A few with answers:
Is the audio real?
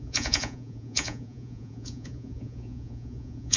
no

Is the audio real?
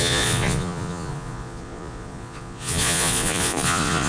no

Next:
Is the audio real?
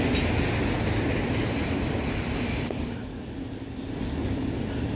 yes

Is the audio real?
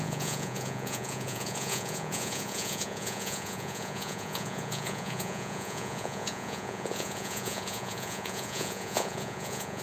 no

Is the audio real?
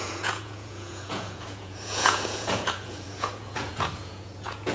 no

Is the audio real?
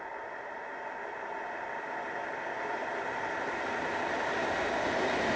yes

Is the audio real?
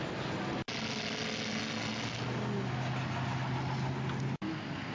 yes